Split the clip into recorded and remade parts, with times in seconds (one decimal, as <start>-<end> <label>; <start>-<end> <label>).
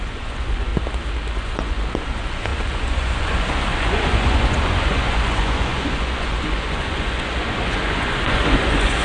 0.0-0.7 remade; 0.7-1.3 recorded; 1.3-9.0 remade